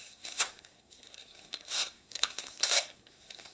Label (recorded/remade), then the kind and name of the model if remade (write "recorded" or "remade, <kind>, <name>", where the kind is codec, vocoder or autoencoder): remade, codec, SNAC